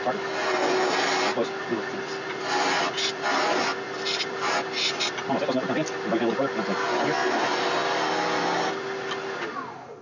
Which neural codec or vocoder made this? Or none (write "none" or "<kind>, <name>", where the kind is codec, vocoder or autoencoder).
none